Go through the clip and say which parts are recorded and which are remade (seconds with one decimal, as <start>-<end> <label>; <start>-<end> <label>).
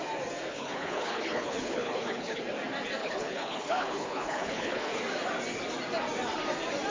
0.0-0.5 recorded; 0.5-2.4 remade; 2.4-3.0 recorded; 3.0-5.0 remade; 5.0-6.9 recorded